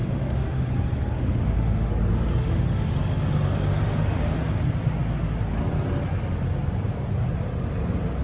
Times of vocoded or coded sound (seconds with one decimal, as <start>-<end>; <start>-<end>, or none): 0.0-0.7; 1.1-1.9; 2.4-2.9; 3.8-4.4